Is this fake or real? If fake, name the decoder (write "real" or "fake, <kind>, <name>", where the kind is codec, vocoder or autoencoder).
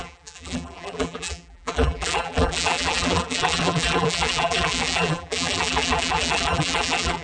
fake, vocoder, BigVGAN v2